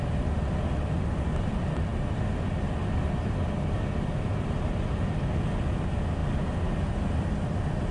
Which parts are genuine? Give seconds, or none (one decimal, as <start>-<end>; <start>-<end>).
0.0-7.9